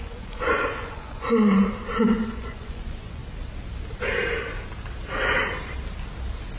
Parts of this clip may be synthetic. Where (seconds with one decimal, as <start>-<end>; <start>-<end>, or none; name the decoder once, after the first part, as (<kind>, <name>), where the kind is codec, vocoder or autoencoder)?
0.0-1.3 (vocoder, Vocos); 2.3-3.2